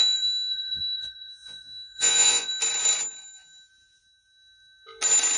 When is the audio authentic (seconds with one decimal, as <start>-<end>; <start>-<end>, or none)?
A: 2.5-5.4